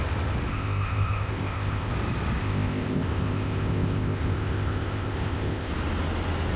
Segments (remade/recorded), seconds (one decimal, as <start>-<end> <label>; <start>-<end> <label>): 0.0-0.5 recorded; 0.5-1.9 remade; 1.9-2.4 recorded; 2.4-5.7 remade; 5.7-6.6 recorded